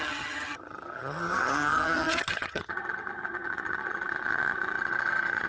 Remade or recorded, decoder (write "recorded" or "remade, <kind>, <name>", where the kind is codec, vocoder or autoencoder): remade, vocoder, HiFi-GAN